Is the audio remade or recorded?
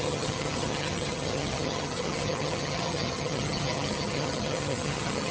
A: remade